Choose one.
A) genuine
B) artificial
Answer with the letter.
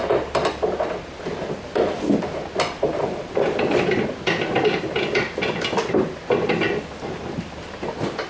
A